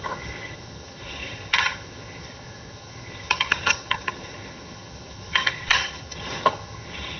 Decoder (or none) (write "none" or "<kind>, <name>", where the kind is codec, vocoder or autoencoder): vocoder, HiFi-GAN